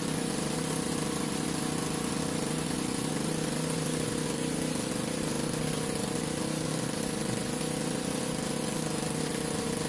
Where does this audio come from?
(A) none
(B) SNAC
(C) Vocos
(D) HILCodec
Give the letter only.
A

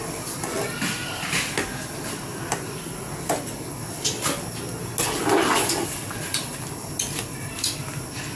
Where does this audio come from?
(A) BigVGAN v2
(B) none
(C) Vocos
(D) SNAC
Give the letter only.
B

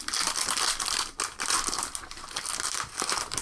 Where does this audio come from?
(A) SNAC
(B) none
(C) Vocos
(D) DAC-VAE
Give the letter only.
B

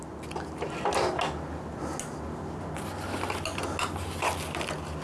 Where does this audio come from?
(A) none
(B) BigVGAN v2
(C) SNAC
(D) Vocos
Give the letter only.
A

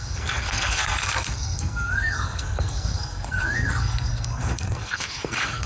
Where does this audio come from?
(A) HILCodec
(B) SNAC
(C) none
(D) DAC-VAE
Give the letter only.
B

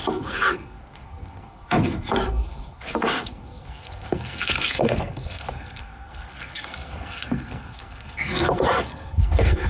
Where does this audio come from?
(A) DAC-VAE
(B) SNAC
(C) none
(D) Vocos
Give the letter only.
B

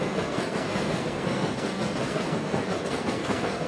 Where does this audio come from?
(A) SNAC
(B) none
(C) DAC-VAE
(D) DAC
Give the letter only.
A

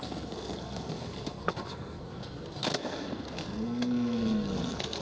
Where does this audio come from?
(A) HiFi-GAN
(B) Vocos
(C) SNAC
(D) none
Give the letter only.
C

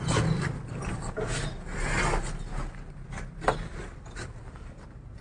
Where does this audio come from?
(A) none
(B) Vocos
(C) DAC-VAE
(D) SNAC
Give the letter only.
A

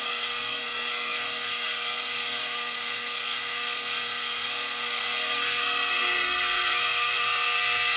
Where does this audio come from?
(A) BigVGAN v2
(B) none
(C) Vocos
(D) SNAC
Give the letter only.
D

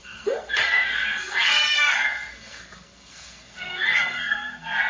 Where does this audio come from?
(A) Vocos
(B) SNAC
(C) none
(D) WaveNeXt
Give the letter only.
B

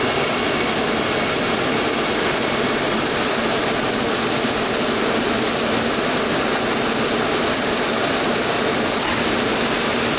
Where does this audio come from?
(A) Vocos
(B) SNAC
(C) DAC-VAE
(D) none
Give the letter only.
D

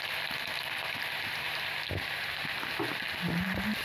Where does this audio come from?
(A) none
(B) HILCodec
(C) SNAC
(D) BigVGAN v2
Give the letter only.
A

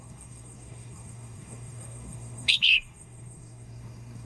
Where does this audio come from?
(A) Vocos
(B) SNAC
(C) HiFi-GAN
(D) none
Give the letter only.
B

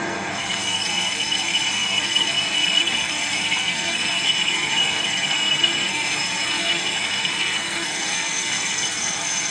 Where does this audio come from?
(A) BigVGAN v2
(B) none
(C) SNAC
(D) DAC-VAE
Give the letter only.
C